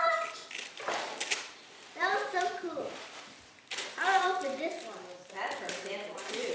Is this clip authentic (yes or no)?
no